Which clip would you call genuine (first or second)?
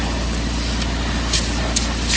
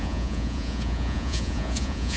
first